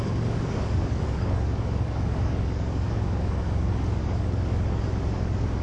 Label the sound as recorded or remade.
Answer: remade